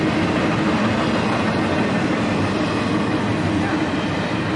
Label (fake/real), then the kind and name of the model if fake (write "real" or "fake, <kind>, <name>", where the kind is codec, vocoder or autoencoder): real